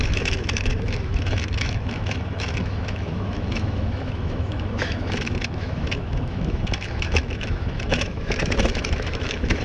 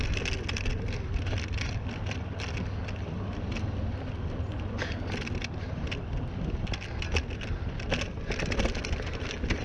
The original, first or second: second